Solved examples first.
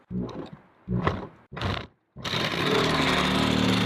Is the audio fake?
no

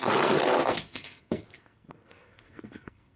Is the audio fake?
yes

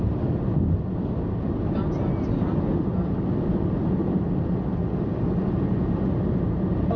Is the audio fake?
no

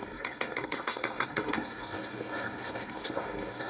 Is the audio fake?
yes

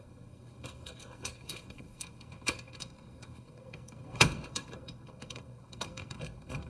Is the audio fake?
yes